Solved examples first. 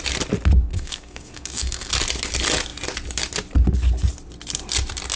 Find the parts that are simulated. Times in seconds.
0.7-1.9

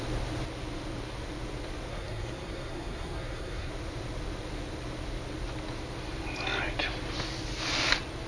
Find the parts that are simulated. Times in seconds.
1.9-3.7

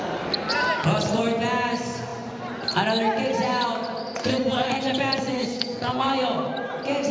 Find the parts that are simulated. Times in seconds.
4.2-4.8; 5.3-6.1